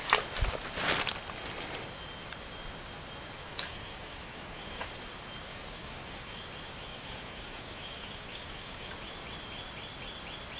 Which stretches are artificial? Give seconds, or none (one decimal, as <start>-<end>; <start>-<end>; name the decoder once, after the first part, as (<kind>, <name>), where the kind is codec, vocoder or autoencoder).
3.5-4.9 (codec, DAC); 5.5-6.4; 6.9-8.9